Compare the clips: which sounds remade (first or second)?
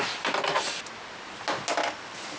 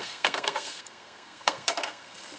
second